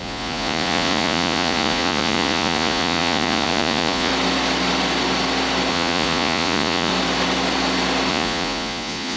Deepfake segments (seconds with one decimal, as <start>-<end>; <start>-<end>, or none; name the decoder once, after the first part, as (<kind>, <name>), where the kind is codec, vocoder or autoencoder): 0.0-4.1 (vocoder, Vocos); 5.7-6.9; 8.1-9.2